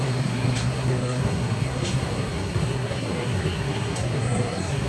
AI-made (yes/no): yes